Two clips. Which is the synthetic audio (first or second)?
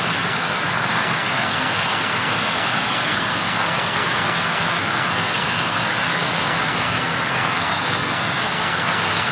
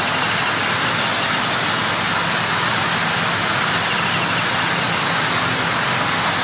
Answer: first